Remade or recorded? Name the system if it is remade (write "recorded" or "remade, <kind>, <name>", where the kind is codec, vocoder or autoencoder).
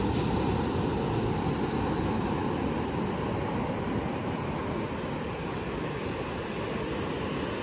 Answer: recorded